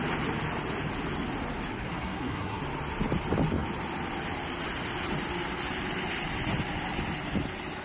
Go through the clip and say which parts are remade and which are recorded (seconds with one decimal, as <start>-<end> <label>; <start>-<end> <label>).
0.0-1.7 recorded; 1.7-2.6 remade; 2.6-7.8 recorded